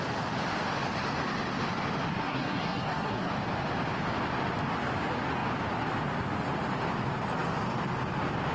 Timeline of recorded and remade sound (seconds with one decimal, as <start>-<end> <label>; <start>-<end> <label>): 0.0-2.1 recorded; 2.1-3.3 remade; 3.3-8.5 recorded